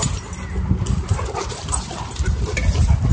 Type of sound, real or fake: real